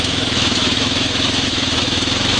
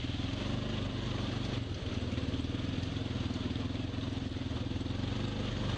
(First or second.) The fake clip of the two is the first